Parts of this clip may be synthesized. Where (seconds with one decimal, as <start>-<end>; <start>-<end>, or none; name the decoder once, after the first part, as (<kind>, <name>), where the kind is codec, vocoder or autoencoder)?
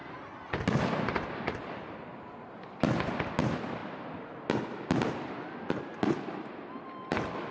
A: none